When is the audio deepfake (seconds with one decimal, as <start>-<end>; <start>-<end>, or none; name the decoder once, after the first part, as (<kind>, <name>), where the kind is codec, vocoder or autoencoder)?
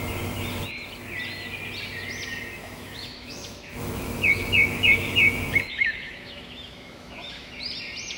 2.6-7.5 (autoencoder, DAC-VAE)